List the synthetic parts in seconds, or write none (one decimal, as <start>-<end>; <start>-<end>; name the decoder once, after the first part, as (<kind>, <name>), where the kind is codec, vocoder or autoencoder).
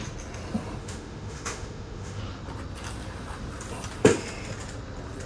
0.8-2.2 (autoencoder, DAC-VAE)